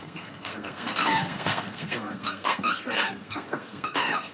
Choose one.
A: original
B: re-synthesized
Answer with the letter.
B